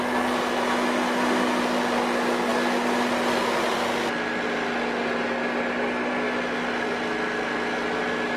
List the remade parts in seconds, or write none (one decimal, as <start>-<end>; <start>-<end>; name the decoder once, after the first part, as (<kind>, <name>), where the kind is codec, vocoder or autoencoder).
none